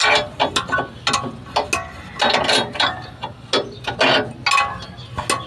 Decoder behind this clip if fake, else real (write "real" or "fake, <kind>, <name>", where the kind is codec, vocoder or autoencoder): real